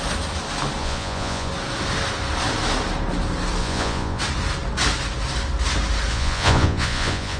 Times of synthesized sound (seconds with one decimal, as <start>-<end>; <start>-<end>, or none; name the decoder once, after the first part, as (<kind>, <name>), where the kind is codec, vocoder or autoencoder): 0.8-1.5 (vocoder, Vocos); 3.6-4.2; 6.1-7.4